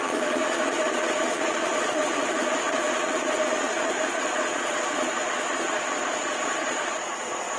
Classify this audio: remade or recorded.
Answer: remade